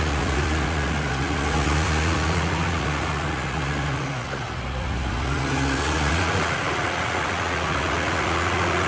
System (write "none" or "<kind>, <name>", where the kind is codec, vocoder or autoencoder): vocoder, Vocos